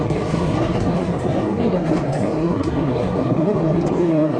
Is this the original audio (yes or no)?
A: no